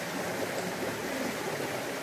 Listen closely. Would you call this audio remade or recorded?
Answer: recorded